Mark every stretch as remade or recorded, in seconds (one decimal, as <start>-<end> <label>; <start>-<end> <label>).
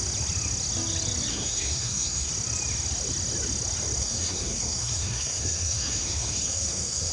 0.0-1.3 recorded; 1.3-2.3 remade; 2.3-4.0 recorded; 4.0-7.1 remade